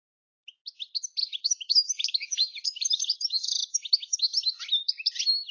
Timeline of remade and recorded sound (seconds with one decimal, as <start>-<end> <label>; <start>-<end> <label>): 0.0-1.2 recorded; 1.2-3.7 remade; 3.7-5.5 recorded